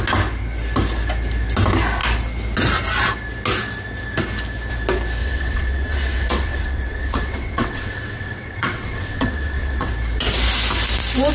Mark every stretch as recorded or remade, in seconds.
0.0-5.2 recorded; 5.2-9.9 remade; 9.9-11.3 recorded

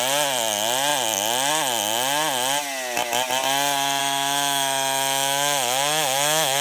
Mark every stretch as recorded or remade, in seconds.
0.0-4.0 recorded; 4.0-6.6 remade

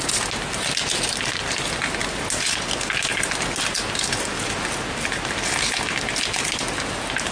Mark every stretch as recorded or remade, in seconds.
0.0-7.3 recorded

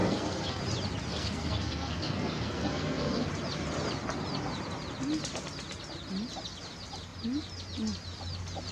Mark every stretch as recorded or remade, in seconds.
0.0-0.6 remade; 0.6-1.1 recorded; 1.1-3.3 remade; 3.3-8.7 recorded